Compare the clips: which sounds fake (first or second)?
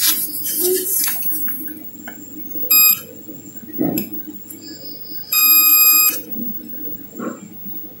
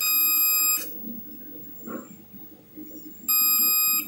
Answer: first